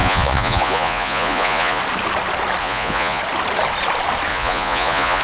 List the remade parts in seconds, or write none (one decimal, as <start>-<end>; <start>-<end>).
0.0-1.8; 2.6-3.2; 4.3-5.2